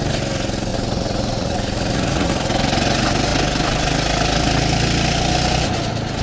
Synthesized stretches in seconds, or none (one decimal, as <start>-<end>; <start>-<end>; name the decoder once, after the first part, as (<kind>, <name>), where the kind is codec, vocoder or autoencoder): 0.7-2.3 (vocoder, Vocos)